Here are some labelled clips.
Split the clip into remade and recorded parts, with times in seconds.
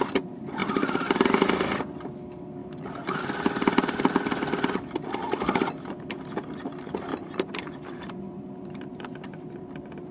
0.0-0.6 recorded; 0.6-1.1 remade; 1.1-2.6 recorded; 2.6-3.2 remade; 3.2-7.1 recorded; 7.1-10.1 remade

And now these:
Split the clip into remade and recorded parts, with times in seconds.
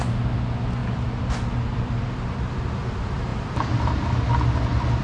0.0-0.8 recorded; 0.8-2.7 remade; 2.7-3.3 recorded; 3.3-3.9 remade; 3.9-5.0 recorded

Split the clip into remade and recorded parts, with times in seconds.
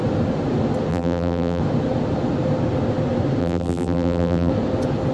0.0-0.9 recorded; 0.9-1.6 remade; 1.6-3.4 recorded; 3.4-4.5 remade; 4.5-5.1 recorded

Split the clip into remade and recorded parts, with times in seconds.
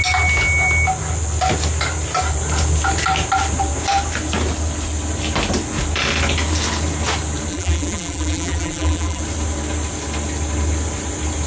0.0-7.5 recorded; 7.5-9.2 remade; 9.2-11.5 recorded